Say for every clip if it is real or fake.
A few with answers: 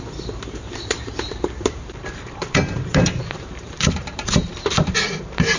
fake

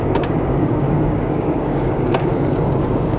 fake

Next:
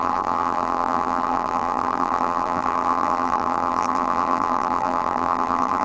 fake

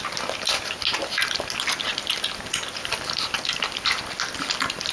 real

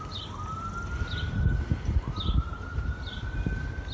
real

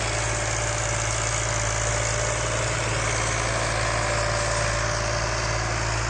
real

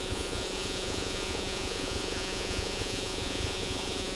fake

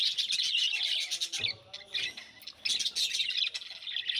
real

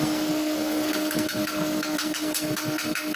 fake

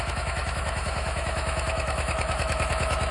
fake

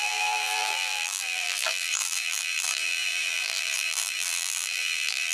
fake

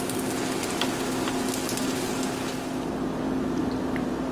real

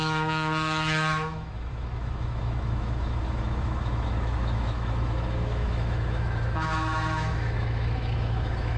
fake